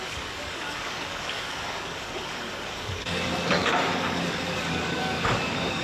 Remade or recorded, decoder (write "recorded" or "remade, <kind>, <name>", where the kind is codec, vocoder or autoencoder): remade, codec, DAC